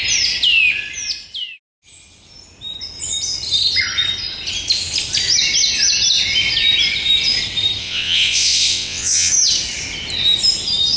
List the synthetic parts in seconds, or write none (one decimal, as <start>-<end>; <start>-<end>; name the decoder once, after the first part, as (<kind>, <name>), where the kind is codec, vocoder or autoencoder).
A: 7.8-9.3 (vocoder, WaveNeXt)